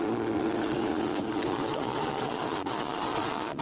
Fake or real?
fake